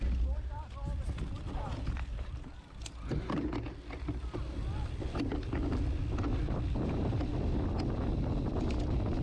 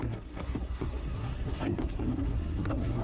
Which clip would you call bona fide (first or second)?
first